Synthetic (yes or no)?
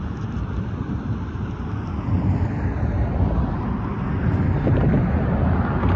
no